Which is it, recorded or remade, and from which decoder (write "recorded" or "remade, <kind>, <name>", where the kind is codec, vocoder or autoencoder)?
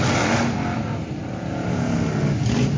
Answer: recorded